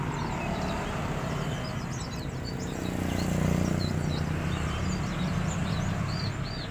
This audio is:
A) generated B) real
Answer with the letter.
B